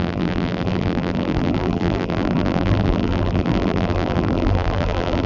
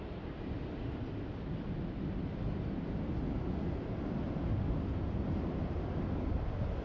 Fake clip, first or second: first